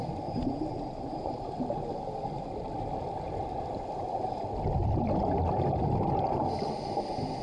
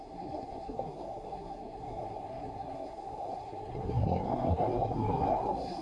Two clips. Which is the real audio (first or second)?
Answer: first